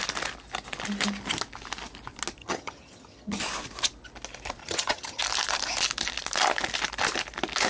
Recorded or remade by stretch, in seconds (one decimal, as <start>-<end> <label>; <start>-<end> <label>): 0.0-2.4 recorded; 2.4-3.4 remade; 3.4-4.6 recorded; 4.6-5.2 remade; 5.2-7.7 recorded